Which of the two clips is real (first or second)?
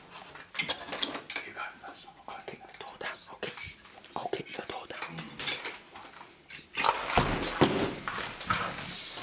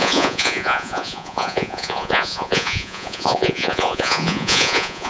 first